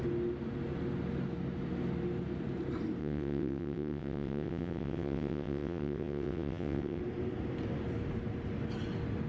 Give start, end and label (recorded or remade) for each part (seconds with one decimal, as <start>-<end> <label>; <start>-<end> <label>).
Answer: 0.0-3.0 recorded; 3.0-7.0 remade; 7.0-9.3 recorded